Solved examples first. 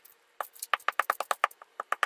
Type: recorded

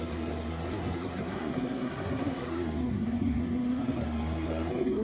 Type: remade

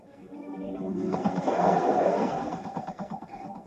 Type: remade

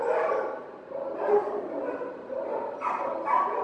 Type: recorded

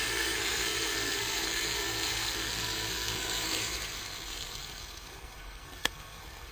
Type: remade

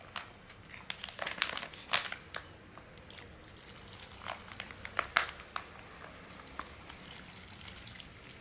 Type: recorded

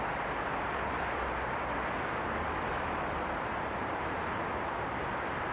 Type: recorded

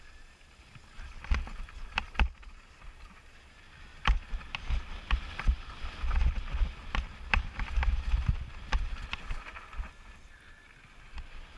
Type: recorded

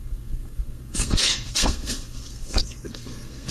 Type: remade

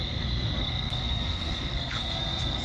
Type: remade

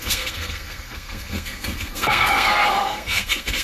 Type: remade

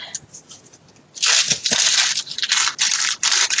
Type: recorded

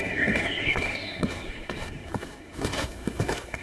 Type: remade